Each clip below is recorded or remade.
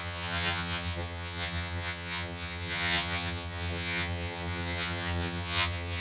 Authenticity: remade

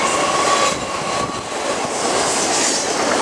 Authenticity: recorded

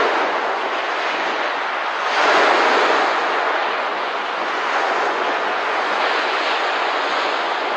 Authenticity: remade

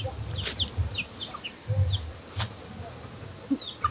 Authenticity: recorded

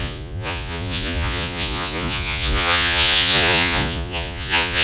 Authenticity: remade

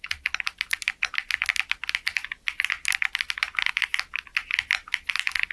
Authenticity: recorded